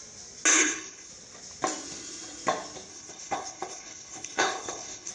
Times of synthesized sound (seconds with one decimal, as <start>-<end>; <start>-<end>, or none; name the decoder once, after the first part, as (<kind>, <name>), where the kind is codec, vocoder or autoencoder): 0.5-1.1 (codec, HILCodec); 2.9-5.1